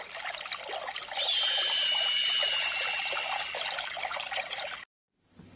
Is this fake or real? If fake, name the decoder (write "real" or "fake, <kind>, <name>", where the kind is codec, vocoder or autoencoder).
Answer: real